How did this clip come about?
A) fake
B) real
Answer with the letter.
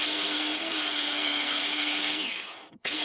A